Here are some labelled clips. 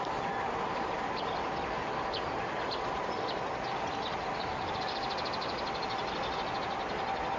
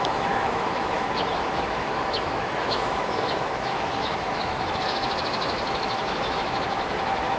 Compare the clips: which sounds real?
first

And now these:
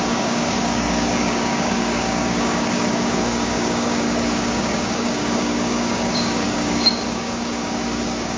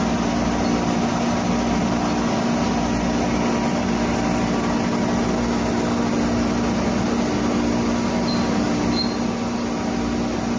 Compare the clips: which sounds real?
second